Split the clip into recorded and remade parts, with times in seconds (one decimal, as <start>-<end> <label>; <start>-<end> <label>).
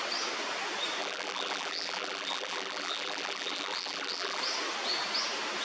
0.0-1.0 recorded; 1.0-4.4 remade; 4.4-5.6 recorded